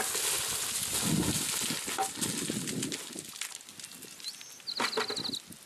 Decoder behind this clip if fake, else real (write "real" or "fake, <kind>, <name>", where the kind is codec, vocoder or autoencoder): real